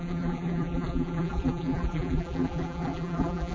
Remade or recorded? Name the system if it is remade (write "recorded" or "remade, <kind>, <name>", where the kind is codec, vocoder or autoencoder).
remade, vocoder, BigVGAN v2